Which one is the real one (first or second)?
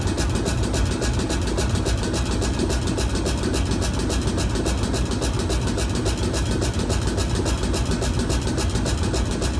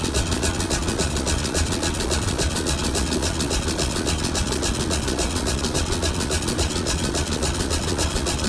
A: first